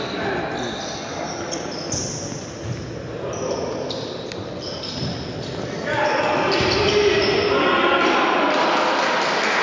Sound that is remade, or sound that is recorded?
recorded